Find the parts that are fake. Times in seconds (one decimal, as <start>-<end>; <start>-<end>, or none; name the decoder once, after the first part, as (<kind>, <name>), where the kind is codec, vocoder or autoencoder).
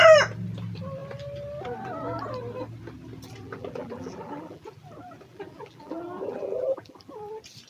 3.4-4.6 (vocoder, BigVGAN v2); 5.3-7.3